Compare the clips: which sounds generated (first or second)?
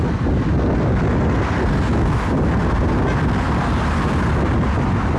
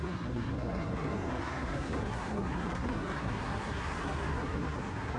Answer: second